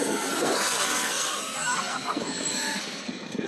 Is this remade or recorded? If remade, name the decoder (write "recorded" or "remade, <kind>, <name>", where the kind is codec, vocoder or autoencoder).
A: remade, codec, SNAC